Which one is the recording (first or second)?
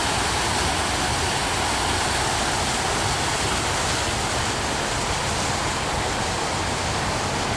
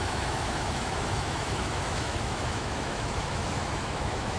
first